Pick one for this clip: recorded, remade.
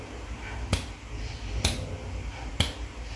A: recorded